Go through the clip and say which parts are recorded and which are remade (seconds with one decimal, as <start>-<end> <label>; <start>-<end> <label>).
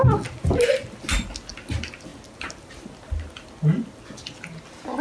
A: 0.0-5.0 recorded